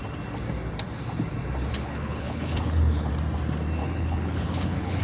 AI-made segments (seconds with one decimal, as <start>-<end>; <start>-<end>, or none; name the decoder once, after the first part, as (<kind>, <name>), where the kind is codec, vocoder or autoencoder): 1.7-3.1 (codec, HILCodec); 3.8-5.0